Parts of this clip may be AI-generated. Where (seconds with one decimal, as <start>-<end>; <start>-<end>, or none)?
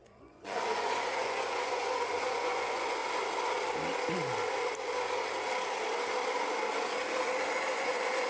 0.0-3.0; 7.7-8.3